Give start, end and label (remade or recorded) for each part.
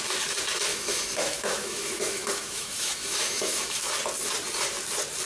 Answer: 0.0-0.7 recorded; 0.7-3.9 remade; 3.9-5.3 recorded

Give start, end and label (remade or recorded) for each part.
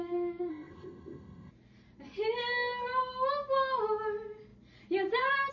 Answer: 0.0-0.5 recorded; 0.5-1.5 remade; 1.5-5.5 recorded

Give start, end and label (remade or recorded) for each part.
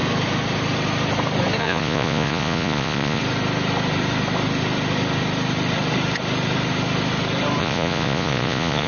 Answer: 0.0-1.6 recorded; 1.6-3.2 remade; 3.2-7.6 recorded; 7.6-8.9 remade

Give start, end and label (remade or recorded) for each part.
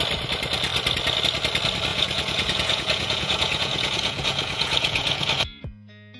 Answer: 0.0-1.9 recorded; 1.9-5.6 remade; 5.6-6.2 recorded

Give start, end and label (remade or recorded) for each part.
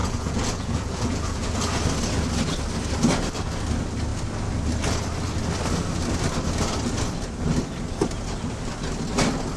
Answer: 0.0-1.8 remade; 1.8-9.6 recorded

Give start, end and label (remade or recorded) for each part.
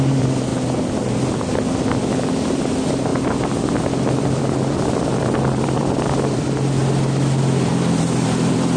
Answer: 0.0-0.5 remade; 0.5-2.7 recorded; 2.7-3.1 remade; 3.1-4.2 recorded; 4.2-6.8 remade; 6.8-7.7 recorded; 7.7-8.8 remade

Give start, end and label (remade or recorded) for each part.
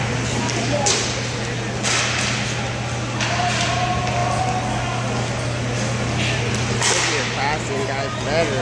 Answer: 0.0-8.6 recorded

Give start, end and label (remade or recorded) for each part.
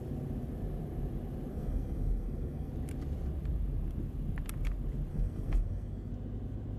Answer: 0.0-1.5 recorded; 1.5-2.7 remade; 2.7-5.1 recorded; 5.1-6.1 remade; 6.1-6.8 recorded